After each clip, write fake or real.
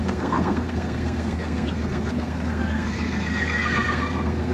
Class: fake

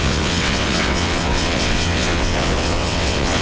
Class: fake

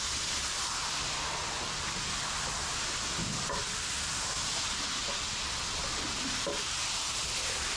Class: fake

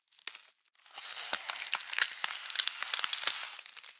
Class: real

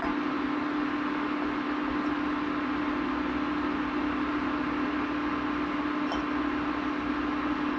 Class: real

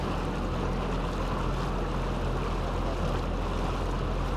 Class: real